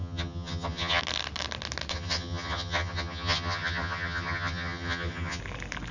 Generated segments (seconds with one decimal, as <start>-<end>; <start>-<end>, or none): 0.0-1.0; 1.9-5.4